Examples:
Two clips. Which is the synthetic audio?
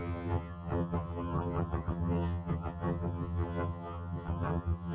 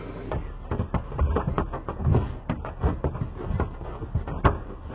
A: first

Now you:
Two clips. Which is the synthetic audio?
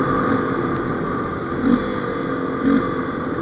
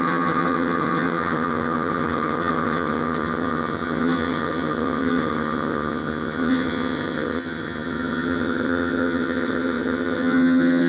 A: second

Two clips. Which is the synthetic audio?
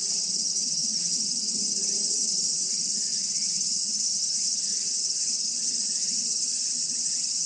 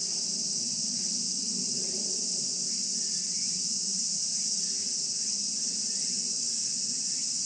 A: first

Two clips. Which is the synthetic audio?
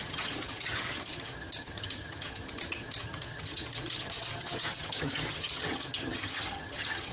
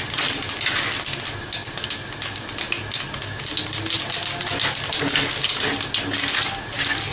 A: first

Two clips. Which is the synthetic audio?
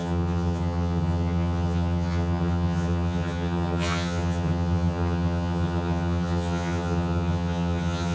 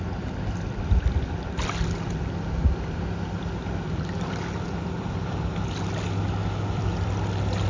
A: first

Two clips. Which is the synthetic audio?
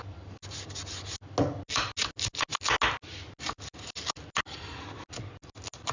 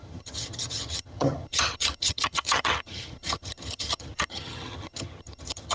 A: second